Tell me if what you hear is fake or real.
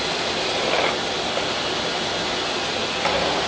real